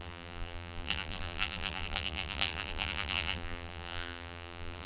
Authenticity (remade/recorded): remade